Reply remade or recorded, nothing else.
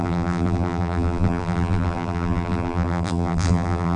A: remade